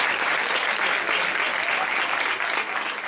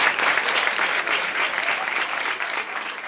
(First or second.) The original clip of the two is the first